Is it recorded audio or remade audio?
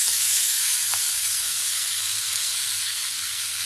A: remade